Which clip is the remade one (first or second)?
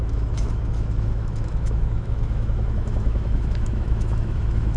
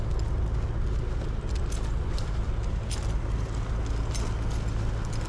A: first